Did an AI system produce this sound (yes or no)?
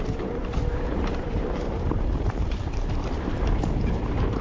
yes